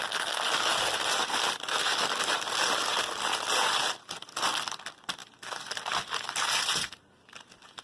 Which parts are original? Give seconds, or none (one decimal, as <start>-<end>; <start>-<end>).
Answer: 0.0-7.8